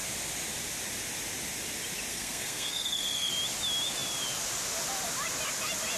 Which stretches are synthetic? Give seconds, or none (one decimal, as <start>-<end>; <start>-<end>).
2.1-3.3